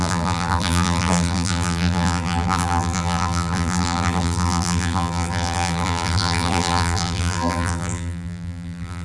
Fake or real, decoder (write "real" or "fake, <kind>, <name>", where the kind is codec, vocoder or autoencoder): fake, vocoder, BigVGAN v2